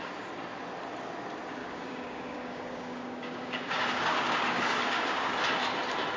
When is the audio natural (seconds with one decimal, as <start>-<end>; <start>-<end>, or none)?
0.0-1.6; 5.3-6.2